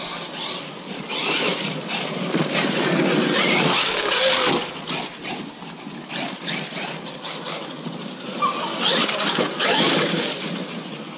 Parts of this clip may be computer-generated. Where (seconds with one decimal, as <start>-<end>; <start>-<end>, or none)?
3.7-4.2; 9.0-10.2